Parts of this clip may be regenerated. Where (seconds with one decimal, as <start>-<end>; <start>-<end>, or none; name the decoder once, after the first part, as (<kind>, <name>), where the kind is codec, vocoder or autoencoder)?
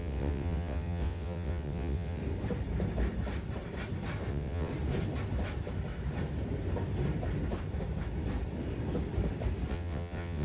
0.0-2.2 (vocoder, WaveNeXt); 4.3-4.7; 9.7-10.4